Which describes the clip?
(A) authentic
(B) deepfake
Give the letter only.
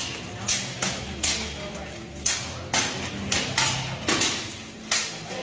A